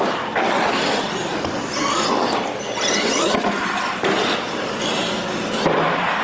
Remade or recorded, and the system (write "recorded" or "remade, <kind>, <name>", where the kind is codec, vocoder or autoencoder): recorded